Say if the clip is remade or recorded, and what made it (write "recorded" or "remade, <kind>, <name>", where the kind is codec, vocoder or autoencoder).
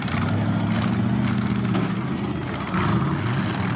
recorded